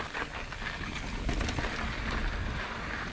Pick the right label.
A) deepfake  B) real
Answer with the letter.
B